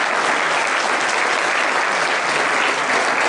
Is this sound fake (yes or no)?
no